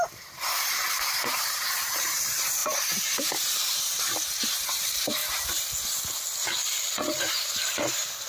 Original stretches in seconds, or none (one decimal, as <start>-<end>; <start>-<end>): 5.2-7.1